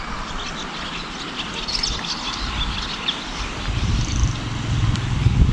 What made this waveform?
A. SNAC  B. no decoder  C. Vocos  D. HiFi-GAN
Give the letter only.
B